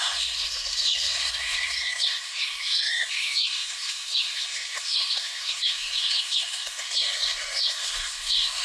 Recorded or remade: remade